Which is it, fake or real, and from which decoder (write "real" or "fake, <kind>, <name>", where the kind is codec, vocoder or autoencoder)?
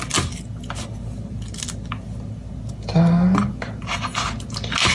real